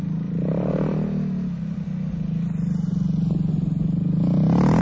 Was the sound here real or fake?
real